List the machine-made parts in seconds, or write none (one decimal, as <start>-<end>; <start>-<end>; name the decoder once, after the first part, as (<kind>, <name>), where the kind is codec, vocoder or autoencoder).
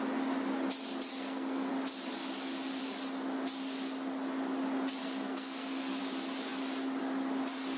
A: 1.1-1.7 (codec, SNAC); 5.0-6.0